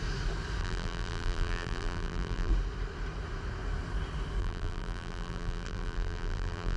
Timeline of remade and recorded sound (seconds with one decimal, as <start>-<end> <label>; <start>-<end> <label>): 0.0-0.6 recorded; 0.6-2.5 remade; 2.5-4.4 recorded; 4.4-6.8 remade